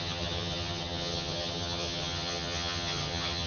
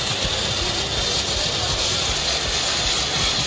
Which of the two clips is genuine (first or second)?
second